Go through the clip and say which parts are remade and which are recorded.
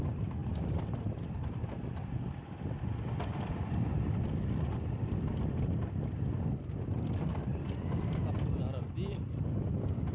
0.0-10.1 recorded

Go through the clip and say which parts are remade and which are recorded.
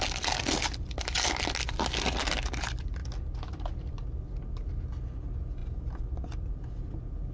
0.0-7.3 recorded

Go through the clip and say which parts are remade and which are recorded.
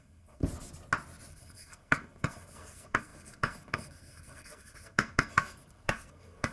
0.0-0.4 remade; 0.4-1.3 recorded; 1.3-6.5 remade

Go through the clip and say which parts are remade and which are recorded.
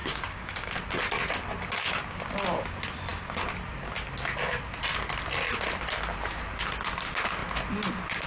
0.0-0.7 remade; 0.7-8.3 recorded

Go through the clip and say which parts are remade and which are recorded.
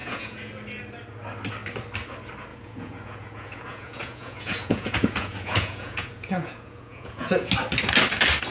0.0-0.5 remade; 0.5-2.5 recorded; 2.5-7.5 remade; 7.5-8.5 recorded